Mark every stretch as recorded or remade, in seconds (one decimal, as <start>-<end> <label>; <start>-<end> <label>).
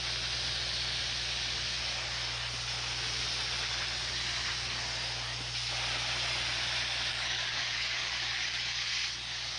0.0-7.1 recorded; 7.1-8.9 remade; 8.9-9.6 recorded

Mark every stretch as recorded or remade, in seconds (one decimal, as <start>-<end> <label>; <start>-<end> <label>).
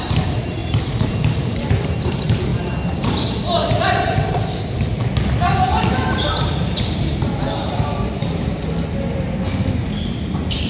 0.0-2.5 remade; 2.5-3.7 recorded; 3.7-5.0 remade; 5.0-9.8 recorded; 9.8-10.7 remade